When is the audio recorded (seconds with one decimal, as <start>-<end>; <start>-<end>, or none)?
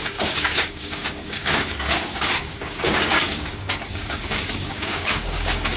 none